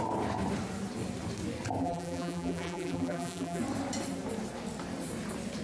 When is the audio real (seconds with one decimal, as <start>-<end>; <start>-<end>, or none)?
0.0-1.8; 3.6-5.6